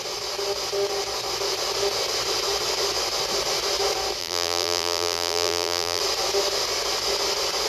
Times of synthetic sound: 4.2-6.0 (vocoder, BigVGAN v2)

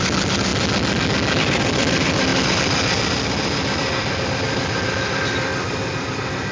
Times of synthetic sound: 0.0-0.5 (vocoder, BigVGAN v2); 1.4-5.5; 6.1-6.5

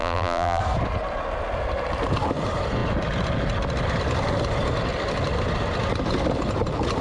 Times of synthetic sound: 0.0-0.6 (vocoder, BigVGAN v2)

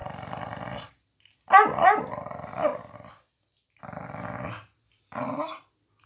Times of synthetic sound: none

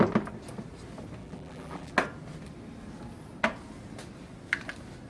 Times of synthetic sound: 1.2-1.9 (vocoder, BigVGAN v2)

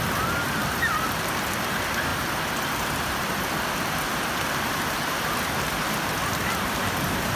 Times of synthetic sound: none

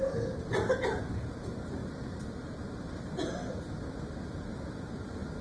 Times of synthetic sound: none

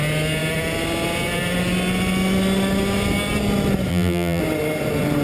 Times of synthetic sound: 3.9-4.4 (vocoder, BigVGAN v2)